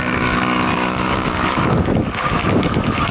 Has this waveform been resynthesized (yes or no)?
yes